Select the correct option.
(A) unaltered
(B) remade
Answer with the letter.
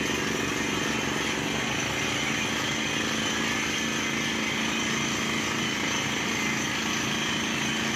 A